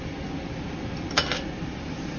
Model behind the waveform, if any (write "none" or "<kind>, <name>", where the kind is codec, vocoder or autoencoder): none